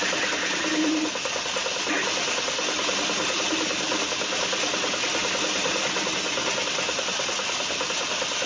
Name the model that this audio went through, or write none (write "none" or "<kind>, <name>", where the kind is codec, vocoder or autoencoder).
none